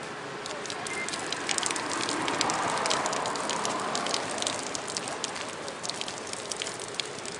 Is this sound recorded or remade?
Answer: recorded